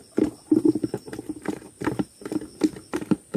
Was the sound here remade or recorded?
recorded